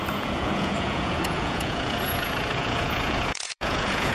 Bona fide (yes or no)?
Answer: no